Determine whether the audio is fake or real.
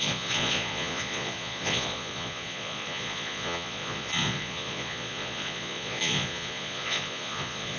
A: fake